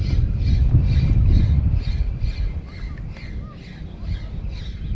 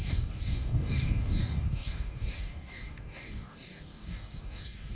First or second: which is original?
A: first